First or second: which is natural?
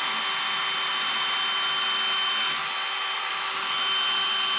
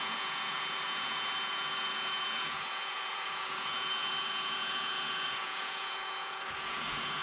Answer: first